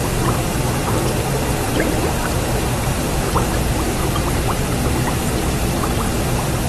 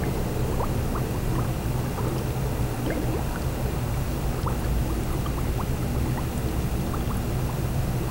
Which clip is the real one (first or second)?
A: second